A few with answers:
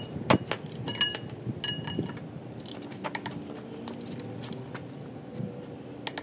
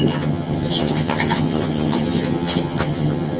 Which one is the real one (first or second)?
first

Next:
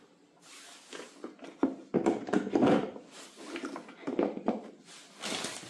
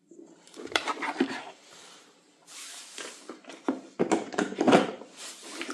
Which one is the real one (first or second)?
first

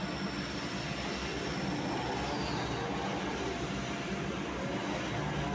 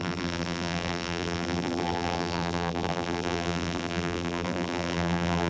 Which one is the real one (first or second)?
first